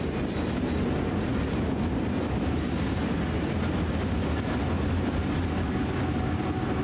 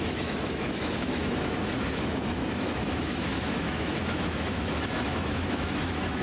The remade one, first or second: second